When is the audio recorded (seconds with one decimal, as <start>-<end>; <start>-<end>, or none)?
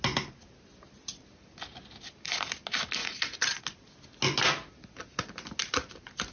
0.0-3.0; 3.6-6.3